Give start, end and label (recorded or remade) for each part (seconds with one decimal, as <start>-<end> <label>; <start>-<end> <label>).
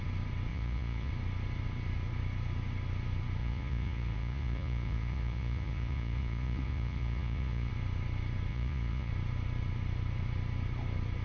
0.0-0.5 recorded; 0.5-1.1 remade; 1.1-3.4 recorded; 3.4-7.7 remade; 7.7-8.5 recorded; 8.5-9.1 remade; 9.1-11.2 recorded